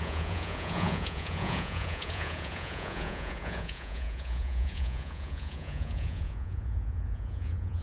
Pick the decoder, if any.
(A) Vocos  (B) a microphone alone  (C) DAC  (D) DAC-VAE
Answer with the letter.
A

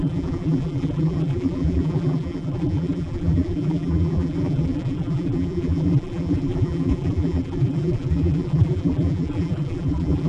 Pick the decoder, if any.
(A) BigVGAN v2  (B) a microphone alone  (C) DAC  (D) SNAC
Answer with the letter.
A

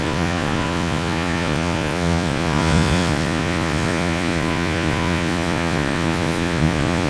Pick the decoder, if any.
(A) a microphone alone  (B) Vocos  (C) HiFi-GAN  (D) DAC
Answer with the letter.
B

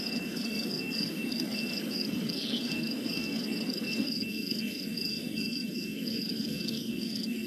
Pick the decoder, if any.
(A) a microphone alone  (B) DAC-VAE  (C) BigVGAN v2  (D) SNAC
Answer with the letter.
D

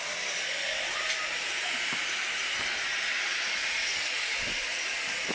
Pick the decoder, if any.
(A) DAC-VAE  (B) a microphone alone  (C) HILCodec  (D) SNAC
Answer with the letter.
B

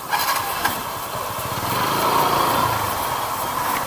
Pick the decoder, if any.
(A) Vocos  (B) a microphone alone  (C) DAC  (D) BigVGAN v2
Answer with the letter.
B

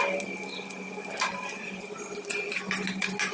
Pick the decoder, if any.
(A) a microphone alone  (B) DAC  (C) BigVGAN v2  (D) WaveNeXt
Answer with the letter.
A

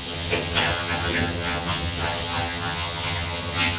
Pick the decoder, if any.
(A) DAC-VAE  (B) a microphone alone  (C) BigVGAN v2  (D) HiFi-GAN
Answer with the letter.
D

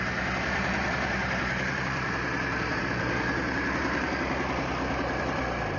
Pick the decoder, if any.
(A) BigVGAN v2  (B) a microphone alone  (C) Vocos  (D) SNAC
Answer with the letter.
A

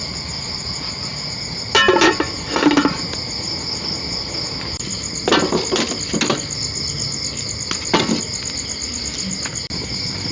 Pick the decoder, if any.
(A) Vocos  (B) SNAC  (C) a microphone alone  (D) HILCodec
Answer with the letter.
C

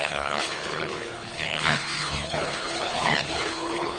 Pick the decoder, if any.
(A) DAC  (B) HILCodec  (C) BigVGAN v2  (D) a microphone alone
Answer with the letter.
B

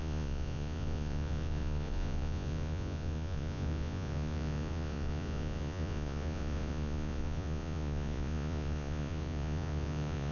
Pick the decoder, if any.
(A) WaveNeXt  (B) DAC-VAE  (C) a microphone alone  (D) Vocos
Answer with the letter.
D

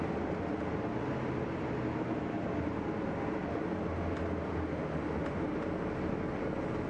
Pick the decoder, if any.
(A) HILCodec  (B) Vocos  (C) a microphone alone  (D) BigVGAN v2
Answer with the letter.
C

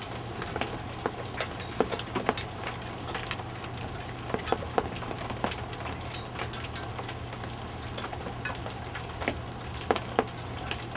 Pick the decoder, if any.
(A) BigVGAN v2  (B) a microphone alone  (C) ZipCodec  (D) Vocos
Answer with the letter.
B